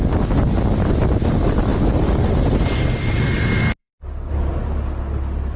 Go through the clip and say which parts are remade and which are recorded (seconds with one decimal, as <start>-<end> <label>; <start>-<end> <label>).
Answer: 0.0-3.8 recorded; 3.8-4.5 remade; 4.5-5.6 recorded